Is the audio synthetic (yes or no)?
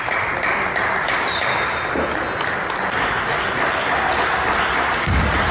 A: no